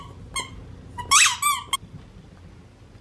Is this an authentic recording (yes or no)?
yes